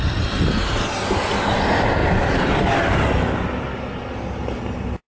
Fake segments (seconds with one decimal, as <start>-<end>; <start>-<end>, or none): none